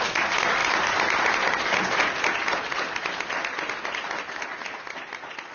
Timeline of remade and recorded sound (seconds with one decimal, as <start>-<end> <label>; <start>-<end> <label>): 0.0-5.5 recorded